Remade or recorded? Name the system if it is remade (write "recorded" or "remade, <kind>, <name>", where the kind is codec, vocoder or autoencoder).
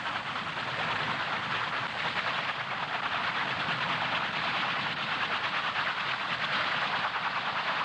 recorded